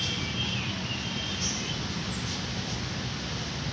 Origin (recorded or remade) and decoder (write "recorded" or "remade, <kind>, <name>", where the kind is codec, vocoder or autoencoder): recorded